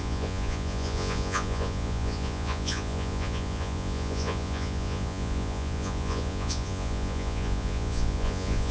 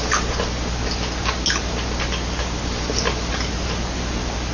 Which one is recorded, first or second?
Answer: second